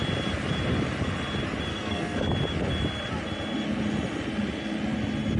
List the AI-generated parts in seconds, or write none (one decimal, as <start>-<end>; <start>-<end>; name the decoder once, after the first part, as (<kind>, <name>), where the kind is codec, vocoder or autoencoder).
1.7-2.3 (codec, SNAC)